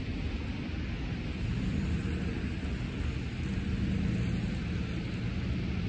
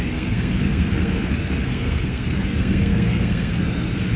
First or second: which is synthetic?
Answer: second